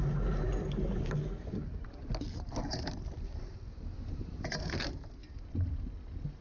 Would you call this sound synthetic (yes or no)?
no